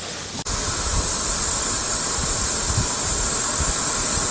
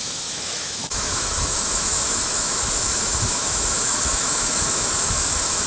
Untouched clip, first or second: first